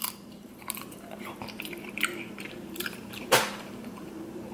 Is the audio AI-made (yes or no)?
yes